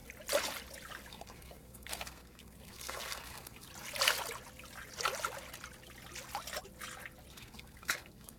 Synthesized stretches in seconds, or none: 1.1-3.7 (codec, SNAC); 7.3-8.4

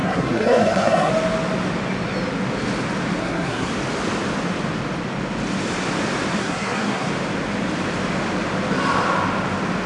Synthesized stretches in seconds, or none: 0.0-1.1 (codec, SNAC); 3.2-3.7; 6.4-7.1

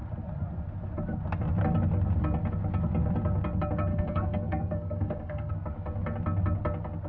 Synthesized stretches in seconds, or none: 3.9-5.5 (codec, SNAC)

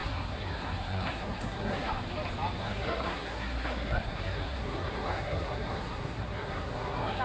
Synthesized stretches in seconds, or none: 0.0-1.9 (codec, SNAC); 2.6-7.2

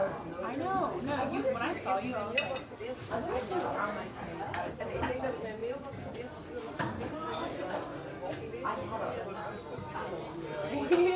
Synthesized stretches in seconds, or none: none

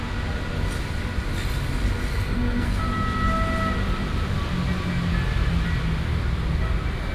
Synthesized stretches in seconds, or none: 2.1-2.8 (codec, SNAC)

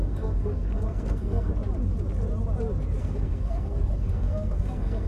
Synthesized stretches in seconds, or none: 0.0-1.5 (codec, SNAC); 3.0-5.1